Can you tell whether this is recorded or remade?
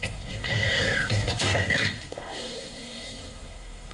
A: remade